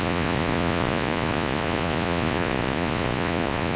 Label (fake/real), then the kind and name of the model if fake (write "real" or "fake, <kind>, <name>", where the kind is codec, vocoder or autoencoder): fake, vocoder, Vocos